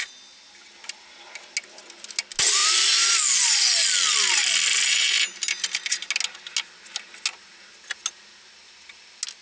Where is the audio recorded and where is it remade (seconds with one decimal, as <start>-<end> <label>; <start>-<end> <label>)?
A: 0.0-9.4 recorded

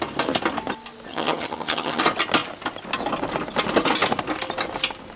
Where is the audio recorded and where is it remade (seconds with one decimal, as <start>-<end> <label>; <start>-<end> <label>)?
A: 0.0-1.1 recorded; 1.1-2.0 remade; 2.0-5.2 recorded

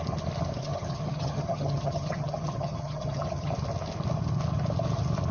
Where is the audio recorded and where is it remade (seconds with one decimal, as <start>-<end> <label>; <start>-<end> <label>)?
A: 0.0-0.6 recorded; 0.6-3.5 remade; 3.5-5.3 recorded